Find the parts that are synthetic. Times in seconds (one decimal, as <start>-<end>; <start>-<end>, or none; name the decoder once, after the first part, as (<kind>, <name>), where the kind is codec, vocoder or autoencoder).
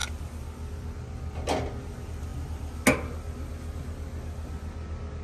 none